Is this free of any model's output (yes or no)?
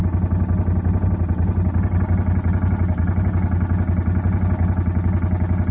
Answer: yes